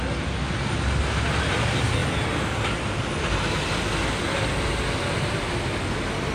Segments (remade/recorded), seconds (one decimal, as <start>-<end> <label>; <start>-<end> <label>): 0.0-6.3 recorded